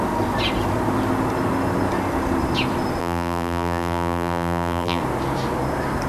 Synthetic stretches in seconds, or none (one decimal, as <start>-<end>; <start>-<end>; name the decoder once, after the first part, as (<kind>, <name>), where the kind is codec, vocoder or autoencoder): 3.0-5.0 (vocoder, BigVGAN v2)